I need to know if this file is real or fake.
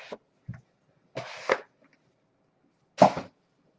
real